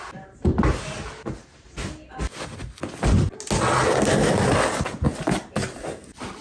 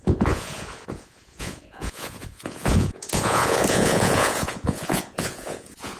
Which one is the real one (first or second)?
first